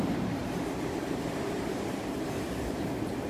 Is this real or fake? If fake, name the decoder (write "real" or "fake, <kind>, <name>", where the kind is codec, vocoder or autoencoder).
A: fake, vocoder, BigVGAN v2